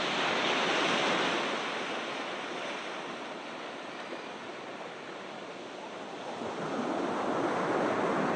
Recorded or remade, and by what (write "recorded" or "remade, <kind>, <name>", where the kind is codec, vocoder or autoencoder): recorded